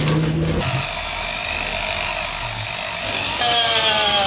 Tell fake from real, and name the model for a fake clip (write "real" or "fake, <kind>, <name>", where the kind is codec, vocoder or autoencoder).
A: real